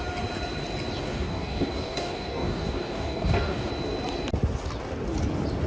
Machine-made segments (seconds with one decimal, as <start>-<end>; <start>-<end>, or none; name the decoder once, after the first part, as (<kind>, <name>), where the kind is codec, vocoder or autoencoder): 1.0-3.7 (codec, DAC)